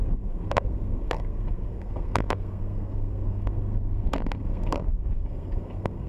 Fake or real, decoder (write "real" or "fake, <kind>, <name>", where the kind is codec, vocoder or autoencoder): fake, codec, SNAC